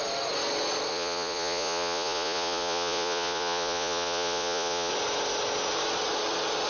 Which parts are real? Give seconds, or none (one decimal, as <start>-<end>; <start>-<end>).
0.0-0.9; 4.9-6.7